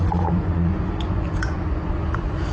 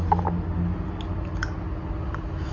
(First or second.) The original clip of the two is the second